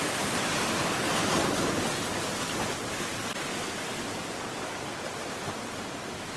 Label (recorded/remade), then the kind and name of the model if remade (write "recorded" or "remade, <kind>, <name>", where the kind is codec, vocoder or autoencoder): recorded